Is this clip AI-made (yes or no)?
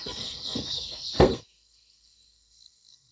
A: yes